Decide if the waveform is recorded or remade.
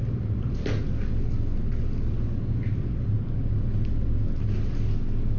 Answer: recorded